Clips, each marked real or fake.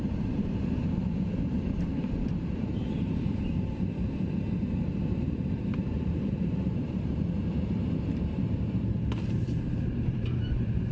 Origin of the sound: fake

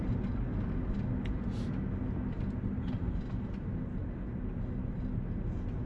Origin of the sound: real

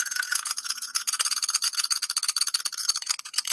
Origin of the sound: fake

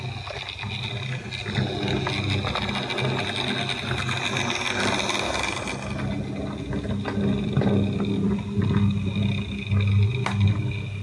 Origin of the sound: real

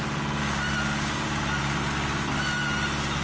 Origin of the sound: real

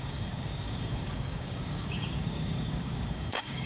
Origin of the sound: fake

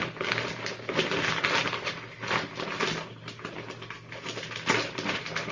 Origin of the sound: real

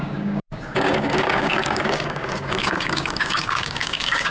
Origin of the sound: fake